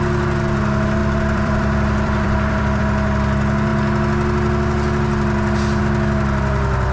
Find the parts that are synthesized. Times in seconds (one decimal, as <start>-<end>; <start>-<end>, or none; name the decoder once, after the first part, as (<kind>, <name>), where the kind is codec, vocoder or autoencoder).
1.0-2.8 (vocoder, BigVGAN v2)